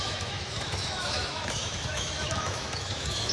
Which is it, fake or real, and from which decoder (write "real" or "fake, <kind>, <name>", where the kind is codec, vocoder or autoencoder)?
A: fake, autoencoder, DAC-VAE